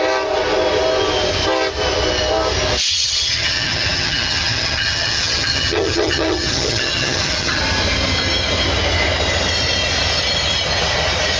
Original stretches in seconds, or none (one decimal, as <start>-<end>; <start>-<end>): 0.0-2.9; 7.6-11.4